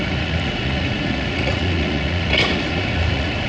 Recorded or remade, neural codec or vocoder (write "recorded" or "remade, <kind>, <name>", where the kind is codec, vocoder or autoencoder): remade, vocoder, Vocos